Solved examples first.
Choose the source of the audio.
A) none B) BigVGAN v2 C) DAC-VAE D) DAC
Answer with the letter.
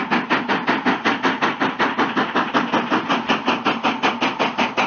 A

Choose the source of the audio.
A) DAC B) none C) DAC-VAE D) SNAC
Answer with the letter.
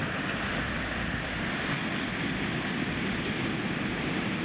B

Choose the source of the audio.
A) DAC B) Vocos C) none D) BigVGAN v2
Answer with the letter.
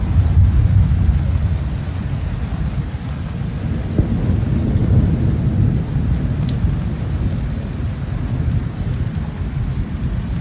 C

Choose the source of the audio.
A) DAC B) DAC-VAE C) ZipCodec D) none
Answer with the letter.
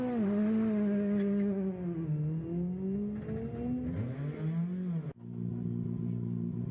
D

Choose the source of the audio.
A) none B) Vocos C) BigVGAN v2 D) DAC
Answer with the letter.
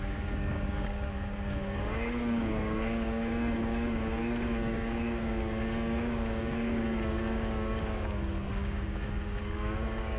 D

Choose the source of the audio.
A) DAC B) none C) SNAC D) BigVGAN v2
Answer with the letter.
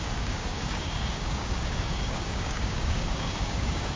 A